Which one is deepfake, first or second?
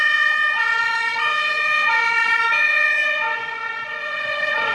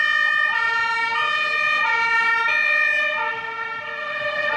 first